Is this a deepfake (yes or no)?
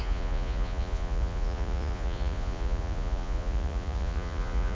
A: yes